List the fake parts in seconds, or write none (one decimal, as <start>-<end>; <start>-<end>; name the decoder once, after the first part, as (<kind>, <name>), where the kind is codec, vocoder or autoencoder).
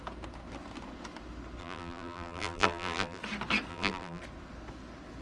1.6-3.2 (vocoder, BigVGAN v2); 3.7-4.2